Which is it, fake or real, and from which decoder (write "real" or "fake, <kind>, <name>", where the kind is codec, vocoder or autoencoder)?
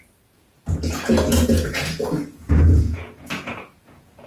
fake, vocoder, Vocos